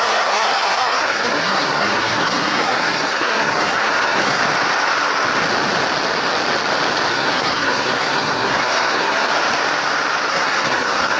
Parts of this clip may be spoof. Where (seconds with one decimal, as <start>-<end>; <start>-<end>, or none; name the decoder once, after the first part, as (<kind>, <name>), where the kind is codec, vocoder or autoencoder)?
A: 0.0-4.4 (codec, SNAC); 7.1-9.3; 10.3-11.2